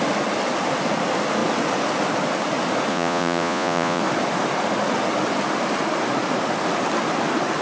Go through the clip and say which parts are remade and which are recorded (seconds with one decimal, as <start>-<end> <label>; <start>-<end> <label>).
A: 0.0-2.9 recorded; 2.9-4.0 remade; 4.0-7.6 recorded